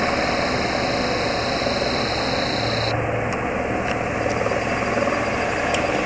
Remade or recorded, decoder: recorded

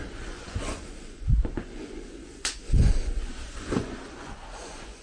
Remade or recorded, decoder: remade, vocoder, Vocos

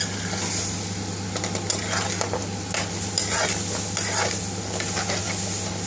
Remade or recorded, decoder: recorded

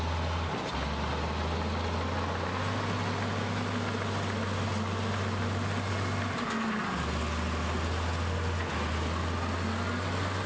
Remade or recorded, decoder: recorded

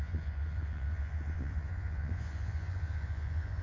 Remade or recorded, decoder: remade, vocoder, Vocos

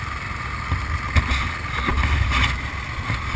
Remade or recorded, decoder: recorded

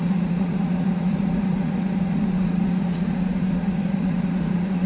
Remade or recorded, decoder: remade, vocoder, Vocos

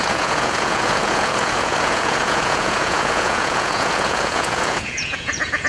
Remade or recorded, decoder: remade, vocoder, Vocos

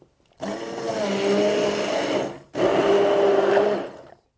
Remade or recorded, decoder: recorded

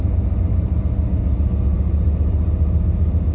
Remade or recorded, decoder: recorded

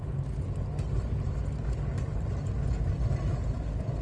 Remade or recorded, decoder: recorded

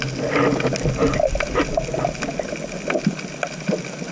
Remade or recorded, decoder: recorded